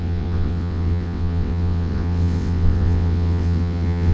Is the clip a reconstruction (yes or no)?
yes